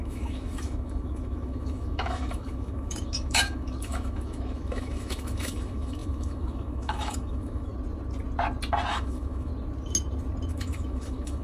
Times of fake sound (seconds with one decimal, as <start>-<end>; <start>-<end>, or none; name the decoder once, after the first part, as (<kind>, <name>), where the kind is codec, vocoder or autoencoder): 0.0-7.7 (autoencoder, DAC-VAE); 8.9-9.5; 10.5-11.4